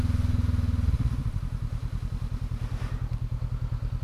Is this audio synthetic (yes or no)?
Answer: no